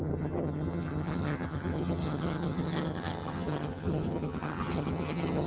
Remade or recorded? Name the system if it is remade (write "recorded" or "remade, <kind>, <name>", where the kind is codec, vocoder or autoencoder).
remade, vocoder, HiFi-GAN